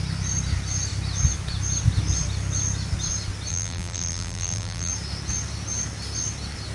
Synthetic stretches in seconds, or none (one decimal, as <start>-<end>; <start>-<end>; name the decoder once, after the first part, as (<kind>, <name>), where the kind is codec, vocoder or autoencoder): 3.5-4.9 (vocoder, BigVGAN v2)

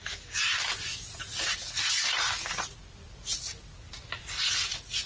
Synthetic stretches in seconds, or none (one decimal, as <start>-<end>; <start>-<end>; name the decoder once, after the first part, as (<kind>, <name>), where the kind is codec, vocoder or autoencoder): none

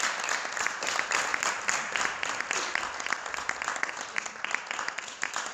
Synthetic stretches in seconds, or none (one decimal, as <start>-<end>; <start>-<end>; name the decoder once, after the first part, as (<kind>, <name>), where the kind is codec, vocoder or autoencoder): none

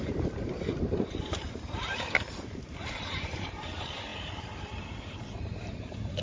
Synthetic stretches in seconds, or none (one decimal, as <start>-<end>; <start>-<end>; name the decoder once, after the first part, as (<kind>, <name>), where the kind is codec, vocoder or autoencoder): 0.0-6.2 (vocoder, BigVGAN v2)

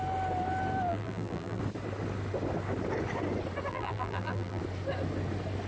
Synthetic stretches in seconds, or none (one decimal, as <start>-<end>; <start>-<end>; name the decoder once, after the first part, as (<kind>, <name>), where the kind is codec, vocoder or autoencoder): 0.9-1.6 (vocoder, BigVGAN v2); 3.7-4.6

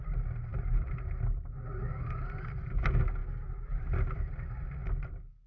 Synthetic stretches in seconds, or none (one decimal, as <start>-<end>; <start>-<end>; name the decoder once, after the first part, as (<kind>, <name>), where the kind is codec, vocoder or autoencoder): none